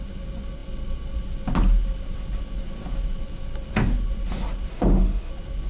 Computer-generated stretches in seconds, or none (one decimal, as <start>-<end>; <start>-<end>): 4.7-5.3